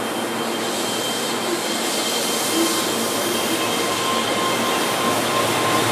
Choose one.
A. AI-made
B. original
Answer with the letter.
B